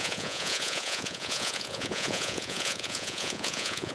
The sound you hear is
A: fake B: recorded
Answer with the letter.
A